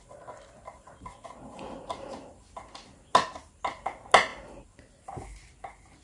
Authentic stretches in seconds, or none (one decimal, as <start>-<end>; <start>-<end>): 0.0-6.0